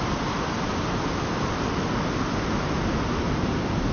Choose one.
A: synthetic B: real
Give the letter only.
B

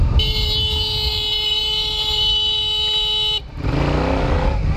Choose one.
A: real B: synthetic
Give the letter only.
A